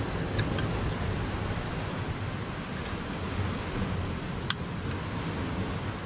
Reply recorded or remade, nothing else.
recorded